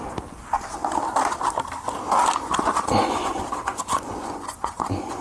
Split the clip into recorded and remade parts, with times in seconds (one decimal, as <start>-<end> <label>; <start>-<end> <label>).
0.0-3.1 recorded; 3.1-5.2 remade